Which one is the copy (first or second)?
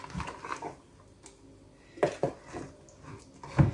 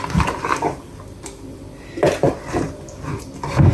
second